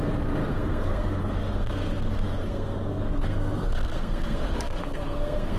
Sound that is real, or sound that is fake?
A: fake